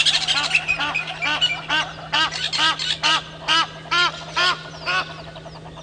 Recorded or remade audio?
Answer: recorded